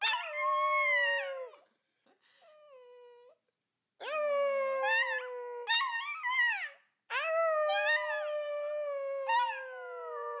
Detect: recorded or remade recorded